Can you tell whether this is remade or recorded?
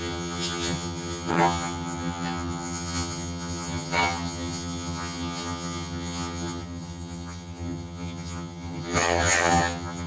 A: remade